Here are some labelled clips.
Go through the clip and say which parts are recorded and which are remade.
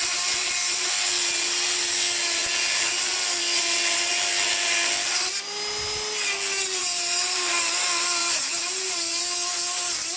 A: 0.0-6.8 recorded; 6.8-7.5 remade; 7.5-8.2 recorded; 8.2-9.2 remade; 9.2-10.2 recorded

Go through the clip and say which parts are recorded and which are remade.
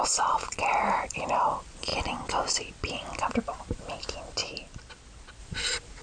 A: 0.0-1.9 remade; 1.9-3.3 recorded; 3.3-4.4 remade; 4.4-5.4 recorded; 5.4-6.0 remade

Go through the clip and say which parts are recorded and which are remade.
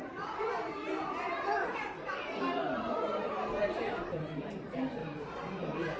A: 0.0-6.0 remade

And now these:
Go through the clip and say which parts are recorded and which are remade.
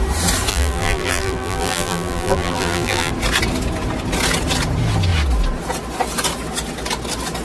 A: 0.0-0.5 recorded; 0.5-3.1 remade; 3.1-7.4 recorded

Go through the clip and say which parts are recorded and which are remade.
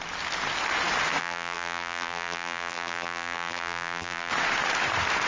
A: 0.0-1.2 recorded; 1.2-4.3 remade; 4.3-5.3 recorded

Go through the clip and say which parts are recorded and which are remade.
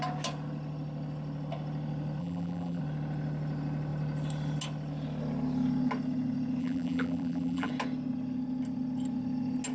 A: 0.0-2.2 recorded; 2.2-2.8 remade; 2.8-6.6 recorded; 6.6-7.7 remade; 7.7-9.7 recorded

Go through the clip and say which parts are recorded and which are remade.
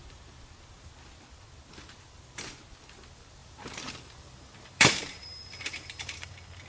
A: 0.0-0.9 remade; 0.9-3.4 recorded; 3.4-6.3 remade; 6.3-6.7 recorded